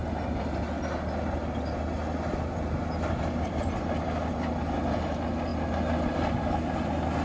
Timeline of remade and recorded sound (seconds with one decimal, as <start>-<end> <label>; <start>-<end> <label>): 0.0-7.2 recorded